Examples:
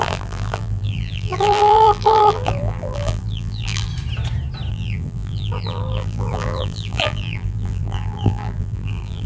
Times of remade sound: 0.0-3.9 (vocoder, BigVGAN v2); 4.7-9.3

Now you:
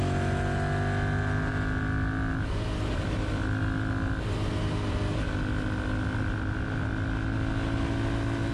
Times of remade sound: none

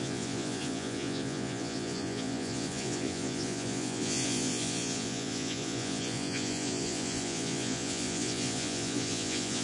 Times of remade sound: 0.0-9.6 (vocoder, Vocos)

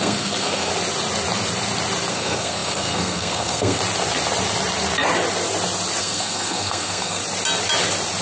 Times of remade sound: 0.0-0.7 (codec, SNAC); 2.1-3.8; 6.0-7.2